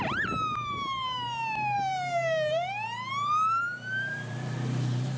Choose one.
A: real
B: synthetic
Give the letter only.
B